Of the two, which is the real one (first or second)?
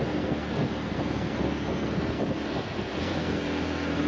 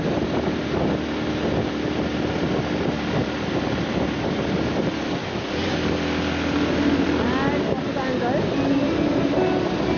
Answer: second